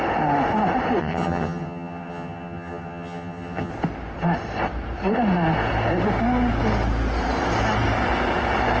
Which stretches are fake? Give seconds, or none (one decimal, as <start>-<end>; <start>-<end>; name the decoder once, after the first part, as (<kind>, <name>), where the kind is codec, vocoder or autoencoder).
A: 1.0-3.7 (vocoder, HiFi-GAN)